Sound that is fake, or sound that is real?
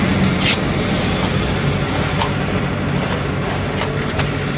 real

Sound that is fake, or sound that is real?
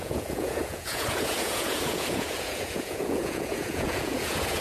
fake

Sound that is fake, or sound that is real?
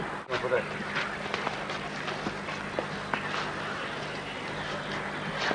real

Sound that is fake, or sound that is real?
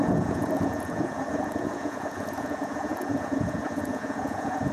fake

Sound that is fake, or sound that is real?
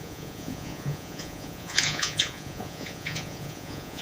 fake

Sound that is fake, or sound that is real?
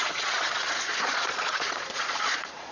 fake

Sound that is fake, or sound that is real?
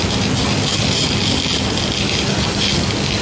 real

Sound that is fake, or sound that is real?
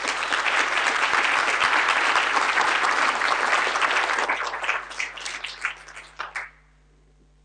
real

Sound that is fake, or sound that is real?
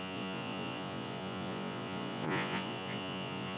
fake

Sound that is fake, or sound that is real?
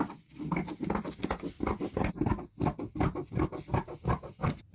real